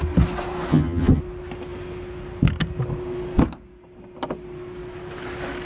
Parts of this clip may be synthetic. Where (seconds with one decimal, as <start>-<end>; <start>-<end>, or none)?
0.7-1.2